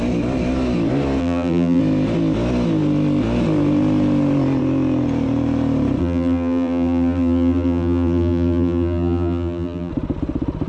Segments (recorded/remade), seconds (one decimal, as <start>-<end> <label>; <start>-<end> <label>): 0.0-1.2 recorded; 1.2-1.8 remade; 1.8-6.0 recorded; 6.0-9.9 remade; 9.9-10.7 recorded